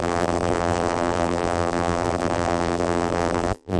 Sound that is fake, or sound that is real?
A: fake